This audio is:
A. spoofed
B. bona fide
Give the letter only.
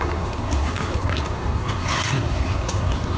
A